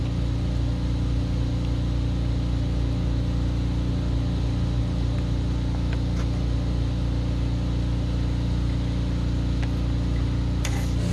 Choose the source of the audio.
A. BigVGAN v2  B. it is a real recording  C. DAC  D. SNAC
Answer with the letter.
B